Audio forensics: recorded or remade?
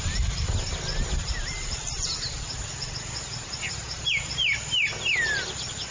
recorded